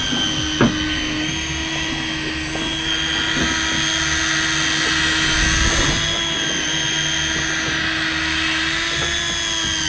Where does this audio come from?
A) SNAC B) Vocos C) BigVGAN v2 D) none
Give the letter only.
D